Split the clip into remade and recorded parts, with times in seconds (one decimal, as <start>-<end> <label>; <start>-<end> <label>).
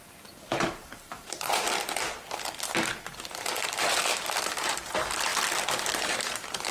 0.0-0.5 recorded; 0.5-1.6 remade; 1.6-6.7 recorded